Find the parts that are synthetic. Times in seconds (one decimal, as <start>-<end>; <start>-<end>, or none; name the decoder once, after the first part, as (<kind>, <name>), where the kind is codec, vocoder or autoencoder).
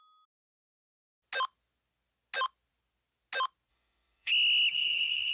3.7-4.3 (autoencoder, DAC-VAE)